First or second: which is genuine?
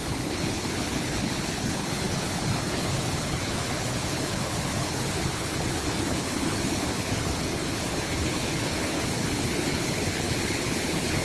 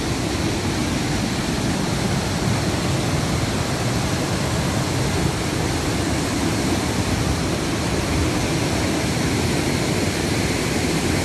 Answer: second